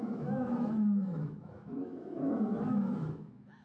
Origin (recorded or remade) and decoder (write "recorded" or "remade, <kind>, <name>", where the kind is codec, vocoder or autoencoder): remade, autoencoder, DAC-VAE